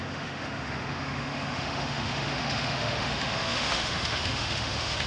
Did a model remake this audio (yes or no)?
yes